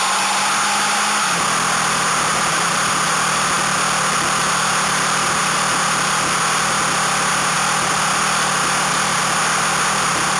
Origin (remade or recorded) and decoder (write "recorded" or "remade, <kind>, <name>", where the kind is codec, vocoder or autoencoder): recorded